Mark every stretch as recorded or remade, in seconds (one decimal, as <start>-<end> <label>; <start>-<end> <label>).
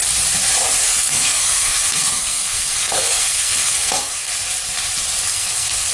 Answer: 0.0-0.8 recorded; 0.8-4.3 remade; 4.3-5.3 recorded; 5.3-5.9 remade